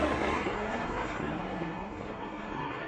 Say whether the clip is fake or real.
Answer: fake